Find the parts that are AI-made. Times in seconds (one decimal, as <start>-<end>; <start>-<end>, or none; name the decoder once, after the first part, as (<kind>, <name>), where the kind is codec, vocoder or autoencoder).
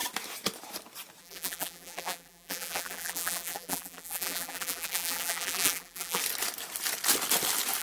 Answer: 1.2-6.2 (vocoder, BigVGAN v2)